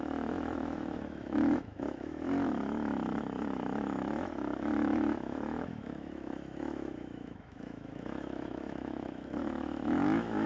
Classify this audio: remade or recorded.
remade